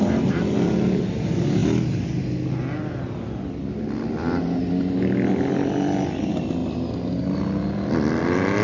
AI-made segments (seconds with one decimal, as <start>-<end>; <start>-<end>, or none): none